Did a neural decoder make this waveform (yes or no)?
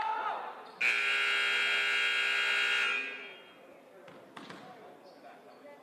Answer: no